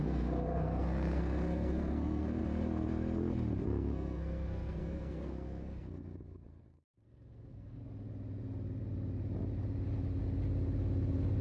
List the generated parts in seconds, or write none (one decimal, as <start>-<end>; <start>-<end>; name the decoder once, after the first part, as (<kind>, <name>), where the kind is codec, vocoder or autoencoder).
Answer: 0.0-2.4 (codec, SNAC); 3.6-7.8